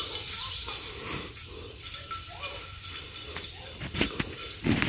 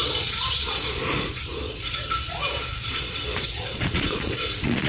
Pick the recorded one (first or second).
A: first